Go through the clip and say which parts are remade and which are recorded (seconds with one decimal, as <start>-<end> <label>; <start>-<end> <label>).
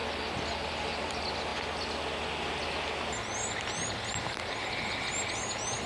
0.0-5.9 recorded